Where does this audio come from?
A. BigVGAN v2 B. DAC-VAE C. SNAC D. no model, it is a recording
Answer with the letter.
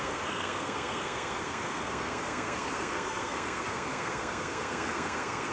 C